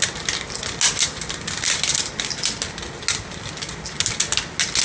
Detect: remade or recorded recorded